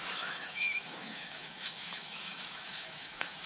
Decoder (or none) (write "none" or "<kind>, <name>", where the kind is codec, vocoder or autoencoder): autoencoder, DAC-VAE